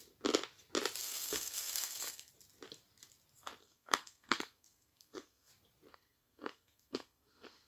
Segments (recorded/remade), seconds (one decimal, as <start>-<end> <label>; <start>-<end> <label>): 0.0-1.0 recorded; 1.0-2.3 remade; 2.3-3.6 recorded; 3.6-5.5 remade; 5.5-5.9 recorded; 5.9-7.7 remade